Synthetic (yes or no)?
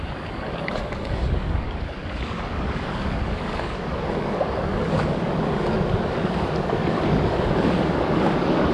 yes